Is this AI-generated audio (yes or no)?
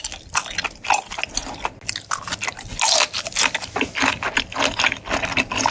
no